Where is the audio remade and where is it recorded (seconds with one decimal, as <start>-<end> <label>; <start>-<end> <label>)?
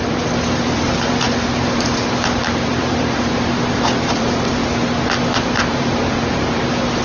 0.0-4.6 remade; 4.6-5.3 recorded; 5.3-7.0 remade